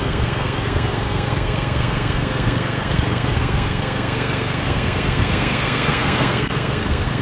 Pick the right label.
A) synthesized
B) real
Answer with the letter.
A